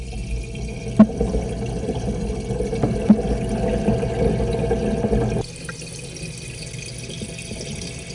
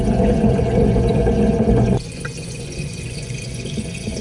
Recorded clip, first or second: first